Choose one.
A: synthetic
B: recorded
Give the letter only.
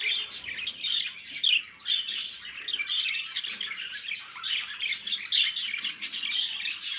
B